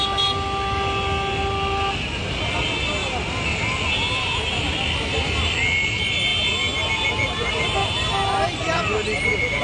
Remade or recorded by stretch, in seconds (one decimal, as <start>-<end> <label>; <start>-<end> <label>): 0.0-9.6 recorded